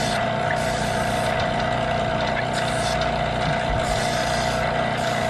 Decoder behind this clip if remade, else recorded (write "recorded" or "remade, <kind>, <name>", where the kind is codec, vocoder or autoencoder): recorded